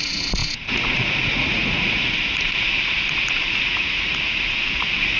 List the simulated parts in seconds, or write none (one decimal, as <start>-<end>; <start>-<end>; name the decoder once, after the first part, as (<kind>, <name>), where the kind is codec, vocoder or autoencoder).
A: 0.0-5.2 (vocoder, Vocos)